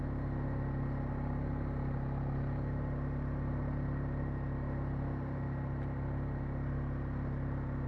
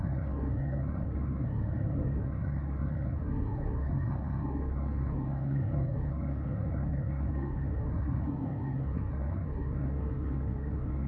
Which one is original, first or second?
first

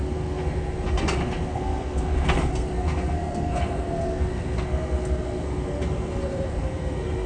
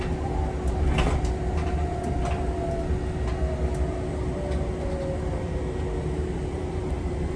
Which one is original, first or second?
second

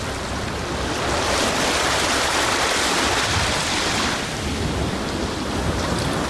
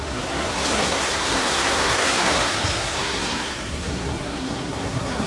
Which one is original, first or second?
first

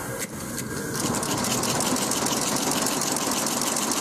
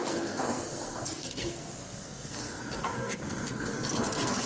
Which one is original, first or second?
first